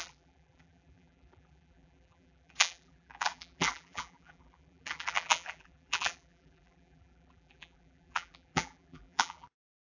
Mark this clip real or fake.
fake